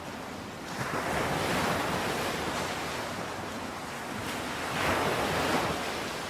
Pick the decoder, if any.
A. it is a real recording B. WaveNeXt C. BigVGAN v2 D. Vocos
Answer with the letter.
A